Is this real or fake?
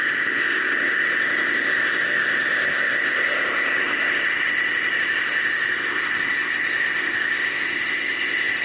fake